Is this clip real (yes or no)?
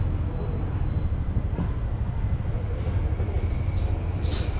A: yes